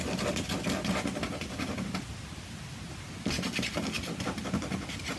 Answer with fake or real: real